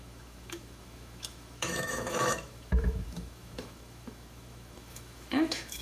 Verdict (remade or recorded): remade